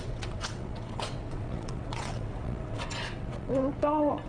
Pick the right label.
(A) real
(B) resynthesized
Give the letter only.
B